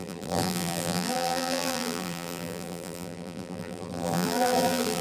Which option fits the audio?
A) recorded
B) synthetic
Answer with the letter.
B